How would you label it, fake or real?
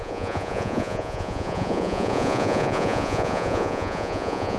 fake